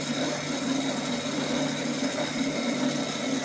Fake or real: real